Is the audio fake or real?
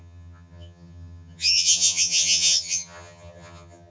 fake